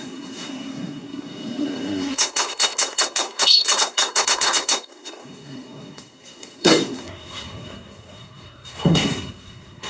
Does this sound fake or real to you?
fake